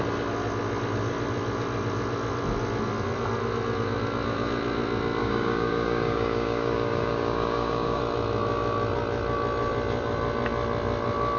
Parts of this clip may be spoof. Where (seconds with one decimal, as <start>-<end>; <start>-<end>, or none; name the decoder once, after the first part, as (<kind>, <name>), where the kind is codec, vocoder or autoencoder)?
5.2-8.0 (codec, DAC)